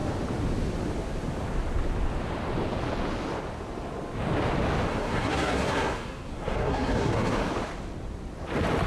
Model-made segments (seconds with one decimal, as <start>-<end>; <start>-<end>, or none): 4.9-7.5